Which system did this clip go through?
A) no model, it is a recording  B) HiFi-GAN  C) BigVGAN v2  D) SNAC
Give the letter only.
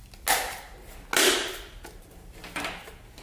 A